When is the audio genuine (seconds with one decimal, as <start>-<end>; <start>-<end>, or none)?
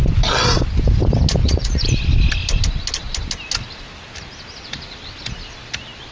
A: 0.0-1.4; 2.0-6.1